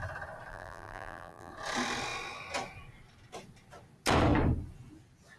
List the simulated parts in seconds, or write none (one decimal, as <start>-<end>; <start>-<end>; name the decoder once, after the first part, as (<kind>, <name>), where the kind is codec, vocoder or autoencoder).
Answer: 0.5-1.5 (vocoder, BigVGAN v2)